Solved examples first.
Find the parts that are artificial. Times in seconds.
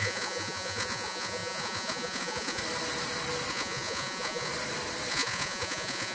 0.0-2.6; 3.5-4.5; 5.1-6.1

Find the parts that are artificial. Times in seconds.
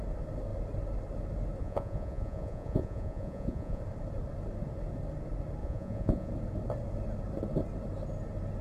1.6-3.8; 5.6-6.3